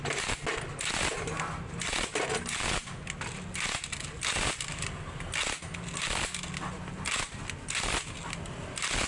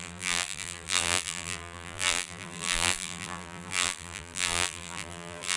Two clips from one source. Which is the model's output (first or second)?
second